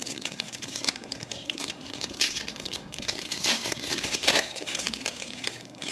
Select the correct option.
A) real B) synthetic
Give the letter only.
B